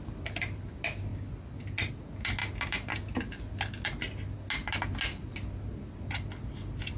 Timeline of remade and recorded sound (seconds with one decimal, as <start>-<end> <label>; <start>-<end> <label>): 0.0-7.0 recorded